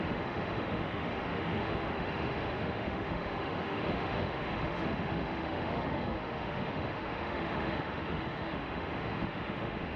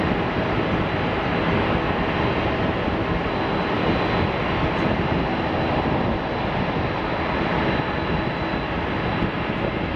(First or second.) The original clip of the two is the second